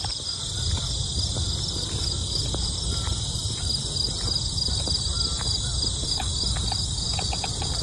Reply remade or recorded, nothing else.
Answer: recorded